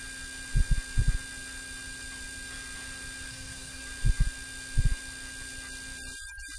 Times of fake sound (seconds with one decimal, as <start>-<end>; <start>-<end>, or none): 3.3-3.8